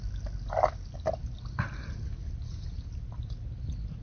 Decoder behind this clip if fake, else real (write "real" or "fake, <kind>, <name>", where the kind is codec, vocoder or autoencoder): real